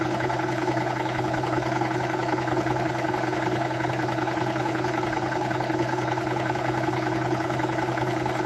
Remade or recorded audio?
remade